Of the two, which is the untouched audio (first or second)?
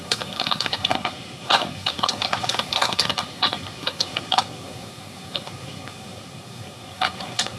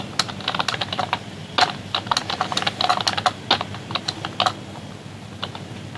second